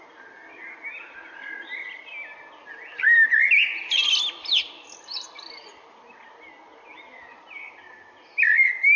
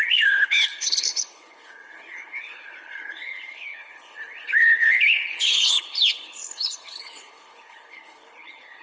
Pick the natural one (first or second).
first